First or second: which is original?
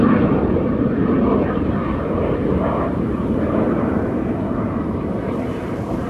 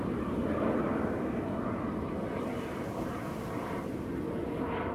second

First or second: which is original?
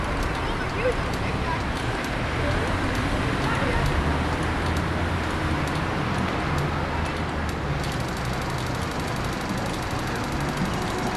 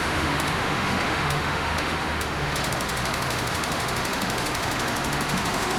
first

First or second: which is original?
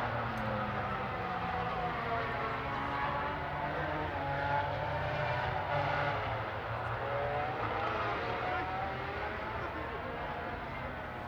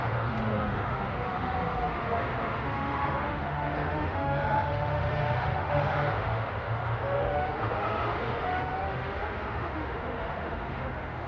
first